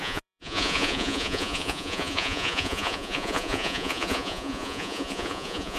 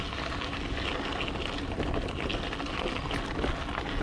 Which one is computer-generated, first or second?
first